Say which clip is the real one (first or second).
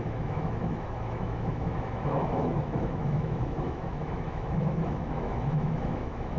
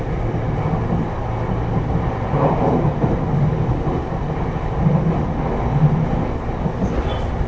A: second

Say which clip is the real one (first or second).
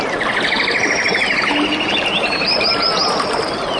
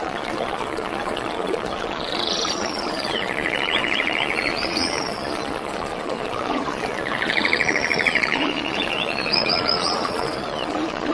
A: first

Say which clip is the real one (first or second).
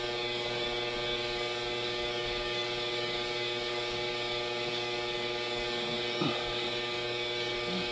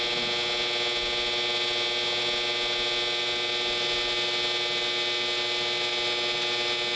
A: second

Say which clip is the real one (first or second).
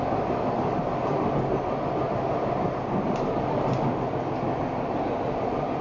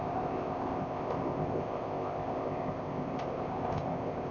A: first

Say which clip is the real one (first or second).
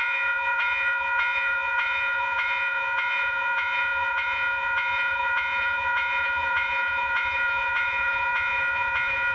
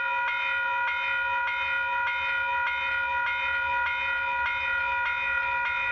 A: second